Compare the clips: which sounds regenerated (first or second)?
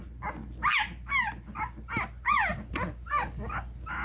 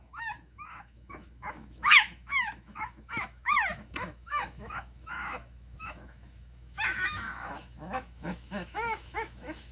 second